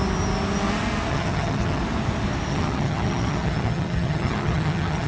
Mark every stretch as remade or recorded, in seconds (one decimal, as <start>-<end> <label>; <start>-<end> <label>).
0.0-1.1 recorded; 1.1-1.8 remade; 1.8-2.5 recorded; 2.5-5.1 remade